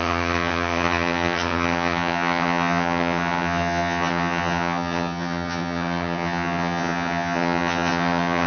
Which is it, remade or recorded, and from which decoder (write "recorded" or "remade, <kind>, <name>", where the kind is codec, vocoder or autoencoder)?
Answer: remade, vocoder, HiFi-GAN